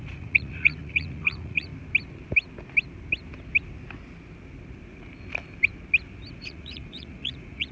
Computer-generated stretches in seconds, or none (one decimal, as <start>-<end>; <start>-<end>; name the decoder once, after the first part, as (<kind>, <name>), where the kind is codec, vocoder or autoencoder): 0.0-1.7 (vocoder, Vocos); 6.3-7.7